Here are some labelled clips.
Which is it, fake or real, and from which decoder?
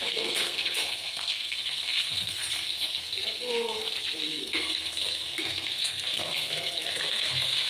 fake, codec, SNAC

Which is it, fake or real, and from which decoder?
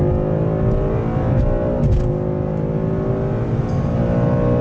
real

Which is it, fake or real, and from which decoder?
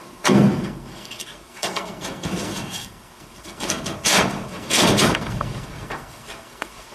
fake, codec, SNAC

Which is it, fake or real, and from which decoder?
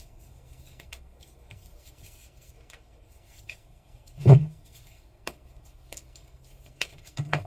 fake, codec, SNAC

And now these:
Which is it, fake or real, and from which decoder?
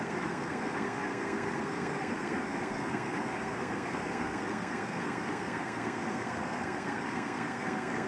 fake, codec, SNAC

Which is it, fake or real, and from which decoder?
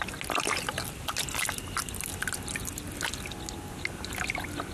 real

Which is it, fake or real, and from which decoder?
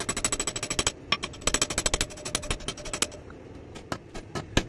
real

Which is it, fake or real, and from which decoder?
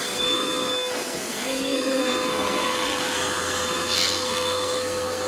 fake, codec, SNAC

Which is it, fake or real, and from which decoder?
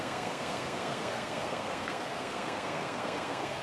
fake, codec, SNAC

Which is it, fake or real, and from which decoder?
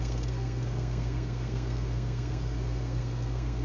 fake, codec, SNAC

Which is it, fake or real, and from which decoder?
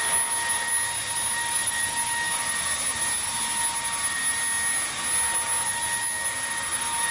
real